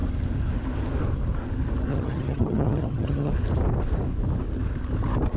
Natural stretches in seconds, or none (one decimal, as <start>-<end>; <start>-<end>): 0.0-1.9; 3.3-5.4